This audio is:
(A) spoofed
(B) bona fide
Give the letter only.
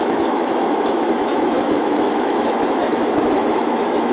A